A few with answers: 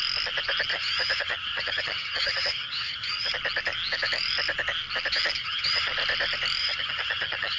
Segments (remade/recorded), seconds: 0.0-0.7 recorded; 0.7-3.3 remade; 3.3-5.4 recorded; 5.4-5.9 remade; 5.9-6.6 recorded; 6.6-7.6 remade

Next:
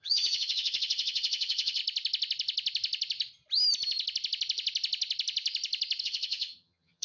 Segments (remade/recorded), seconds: 0.0-1.8 remade; 1.8-6.0 recorded; 6.0-7.0 remade

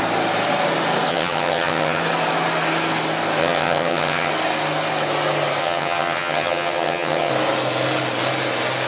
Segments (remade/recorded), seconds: 0.0-1.1 recorded; 1.1-2.0 remade; 2.0-3.4 recorded; 3.4-4.3 remade; 4.3-5.6 recorded; 5.6-7.3 remade; 7.3-8.9 recorded

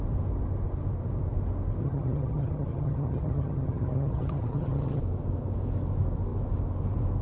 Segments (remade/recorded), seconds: 0.0-1.8 recorded; 1.8-5.0 remade; 5.0-7.2 recorded

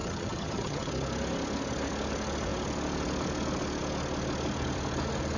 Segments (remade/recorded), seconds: 0.0-0.9 remade; 0.9-5.4 recorded

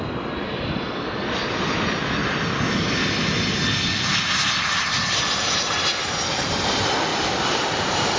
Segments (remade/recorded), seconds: 0.0-8.2 recorded

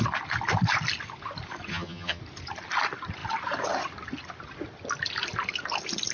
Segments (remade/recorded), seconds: 0.0-1.7 recorded; 1.7-2.2 remade; 2.2-6.1 recorded

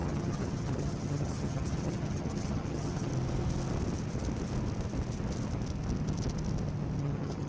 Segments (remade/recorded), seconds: 0.0-3.1 remade; 3.1-7.0 recorded; 7.0-7.5 remade